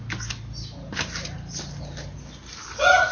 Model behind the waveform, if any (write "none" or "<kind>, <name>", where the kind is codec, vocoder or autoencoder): none